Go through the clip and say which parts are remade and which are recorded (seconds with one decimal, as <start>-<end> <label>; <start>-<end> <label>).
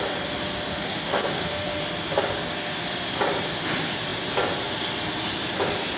0.0-0.7 recorded; 0.7-1.8 remade; 1.8-6.0 recorded